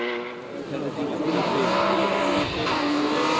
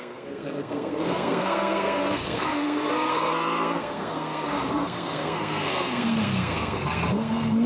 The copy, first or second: second